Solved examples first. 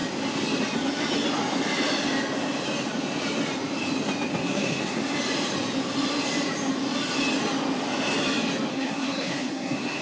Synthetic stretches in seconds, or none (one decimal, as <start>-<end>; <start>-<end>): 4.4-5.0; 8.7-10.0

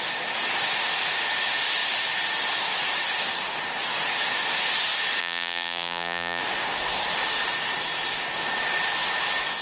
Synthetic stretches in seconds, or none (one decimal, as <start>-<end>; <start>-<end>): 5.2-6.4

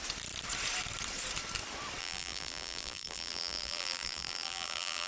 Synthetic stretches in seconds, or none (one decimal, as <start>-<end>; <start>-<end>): 2.0-5.1

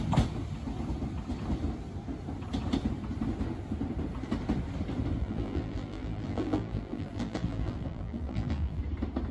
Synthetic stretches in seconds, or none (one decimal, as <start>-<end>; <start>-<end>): 5.2-8.8

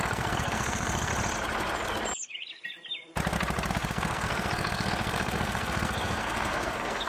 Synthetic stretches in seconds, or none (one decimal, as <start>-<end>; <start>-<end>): 0.0-1.1; 3.7-7.1

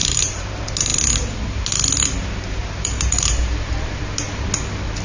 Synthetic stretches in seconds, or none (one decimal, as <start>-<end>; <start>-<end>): 0.0-0.5; 2.6-4.0